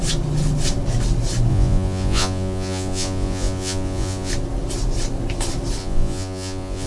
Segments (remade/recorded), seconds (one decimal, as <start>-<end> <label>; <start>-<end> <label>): 0.0-1.5 recorded; 1.5-4.3 remade; 4.3-5.8 recorded; 5.8-6.9 remade